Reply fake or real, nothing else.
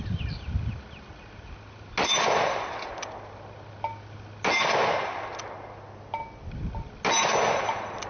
real